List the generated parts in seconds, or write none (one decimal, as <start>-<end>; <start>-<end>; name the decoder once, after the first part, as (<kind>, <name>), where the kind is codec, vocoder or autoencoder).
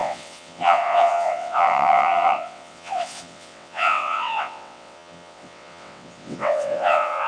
0.0-7.3 (vocoder, WaveNeXt)